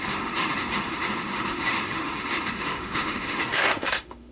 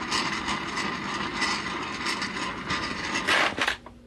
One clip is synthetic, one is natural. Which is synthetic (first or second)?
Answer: first